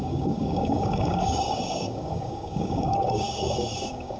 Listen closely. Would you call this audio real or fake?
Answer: fake